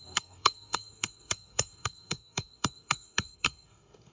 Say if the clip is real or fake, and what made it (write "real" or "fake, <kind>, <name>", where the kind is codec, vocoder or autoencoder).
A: fake, codec, SNAC